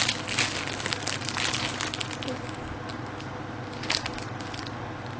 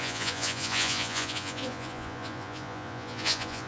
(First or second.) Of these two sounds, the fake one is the second